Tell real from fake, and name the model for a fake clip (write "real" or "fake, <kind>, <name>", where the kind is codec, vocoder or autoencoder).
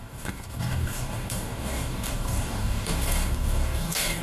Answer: fake, codec, DAC